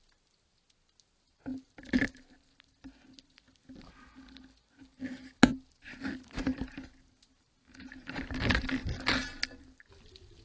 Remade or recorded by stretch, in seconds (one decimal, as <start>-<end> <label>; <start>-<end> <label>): 0.0-10.4 recorded